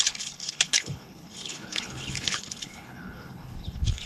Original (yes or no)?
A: no